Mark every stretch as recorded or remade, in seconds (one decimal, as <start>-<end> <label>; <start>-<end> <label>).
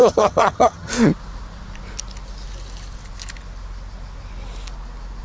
0.0-0.9 remade; 0.9-5.2 recorded